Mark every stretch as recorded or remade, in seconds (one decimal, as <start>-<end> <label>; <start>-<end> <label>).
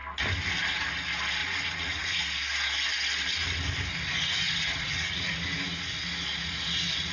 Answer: 0.0-1.4 recorded; 1.4-2.2 remade; 2.2-4.6 recorded; 4.6-5.3 remade; 5.3-7.1 recorded